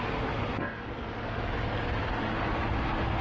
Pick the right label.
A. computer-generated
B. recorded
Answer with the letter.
B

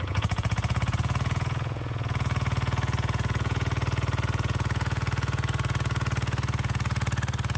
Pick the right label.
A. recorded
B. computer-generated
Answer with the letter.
B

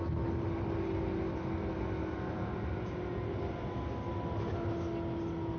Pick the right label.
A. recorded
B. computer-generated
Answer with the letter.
A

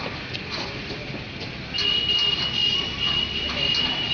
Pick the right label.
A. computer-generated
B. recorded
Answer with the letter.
B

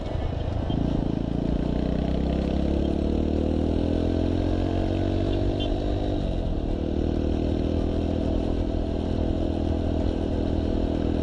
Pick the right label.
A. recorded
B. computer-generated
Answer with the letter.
A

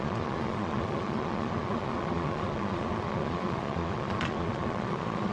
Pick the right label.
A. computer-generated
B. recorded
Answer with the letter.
A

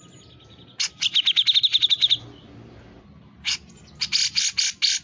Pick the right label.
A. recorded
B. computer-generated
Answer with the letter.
A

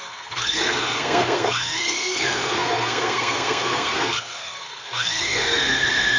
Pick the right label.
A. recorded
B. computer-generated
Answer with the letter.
B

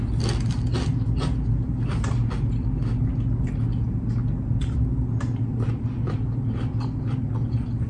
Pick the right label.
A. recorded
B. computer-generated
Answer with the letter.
A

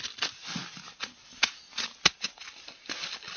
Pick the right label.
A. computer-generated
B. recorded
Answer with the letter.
B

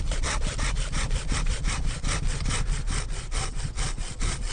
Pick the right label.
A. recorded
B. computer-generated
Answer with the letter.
A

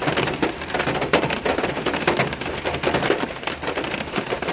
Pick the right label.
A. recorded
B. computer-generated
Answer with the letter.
B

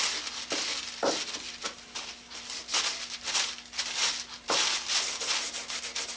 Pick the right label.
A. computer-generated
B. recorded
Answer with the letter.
B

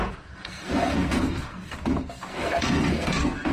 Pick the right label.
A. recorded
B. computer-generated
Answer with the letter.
B